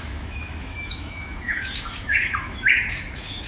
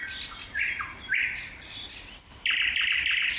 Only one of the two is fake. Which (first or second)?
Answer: first